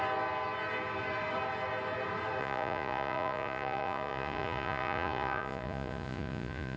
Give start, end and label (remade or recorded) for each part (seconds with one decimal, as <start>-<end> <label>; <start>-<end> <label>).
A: 0.0-2.4 recorded; 2.4-6.8 remade